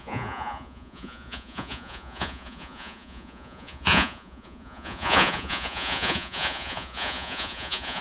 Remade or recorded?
remade